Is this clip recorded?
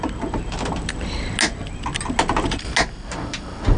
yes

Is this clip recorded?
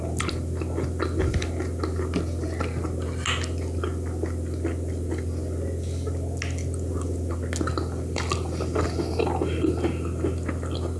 yes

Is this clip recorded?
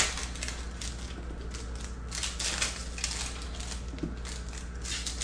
yes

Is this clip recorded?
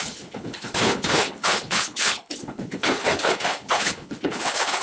no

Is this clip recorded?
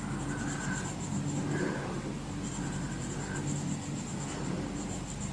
yes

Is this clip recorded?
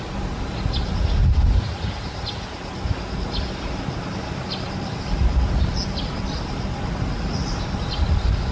yes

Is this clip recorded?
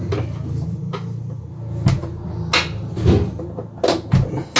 yes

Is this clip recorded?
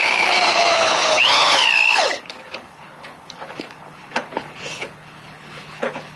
no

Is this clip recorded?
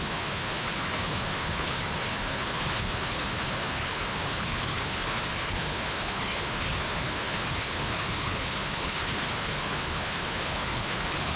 no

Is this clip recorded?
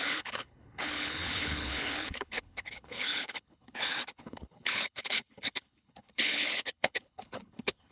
no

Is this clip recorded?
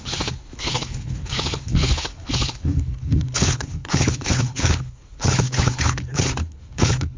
no